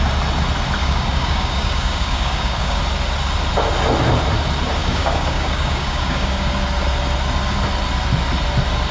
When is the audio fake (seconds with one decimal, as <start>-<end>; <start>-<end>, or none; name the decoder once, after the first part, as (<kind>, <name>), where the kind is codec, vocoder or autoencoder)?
0.8-2.8 (codec, DAC); 4.8-6.5